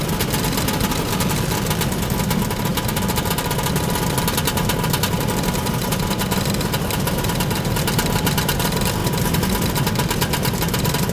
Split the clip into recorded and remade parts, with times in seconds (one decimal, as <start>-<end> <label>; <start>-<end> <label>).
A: 0.0-11.1 recorded